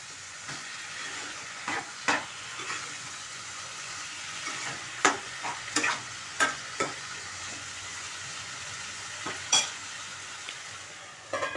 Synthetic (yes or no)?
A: yes